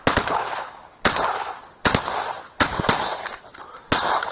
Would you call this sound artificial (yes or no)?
no